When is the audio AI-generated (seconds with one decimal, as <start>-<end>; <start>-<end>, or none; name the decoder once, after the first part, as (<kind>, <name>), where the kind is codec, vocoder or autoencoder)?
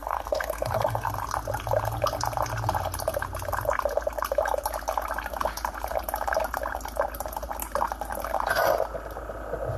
0.0-1.1 (codec, SNAC)